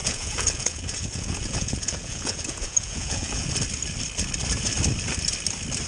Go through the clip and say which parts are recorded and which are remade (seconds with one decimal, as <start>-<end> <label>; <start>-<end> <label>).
0.0-3.5 remade; 3.5-5.9 recorded